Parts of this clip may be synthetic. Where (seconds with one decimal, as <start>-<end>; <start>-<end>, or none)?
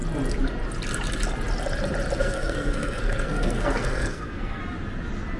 2.2-4.6